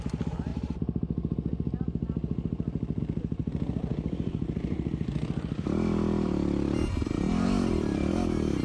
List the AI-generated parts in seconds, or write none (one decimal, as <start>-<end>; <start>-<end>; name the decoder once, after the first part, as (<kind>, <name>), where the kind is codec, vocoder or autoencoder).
3.4-8.1 (vocoder, BigVGAN v2)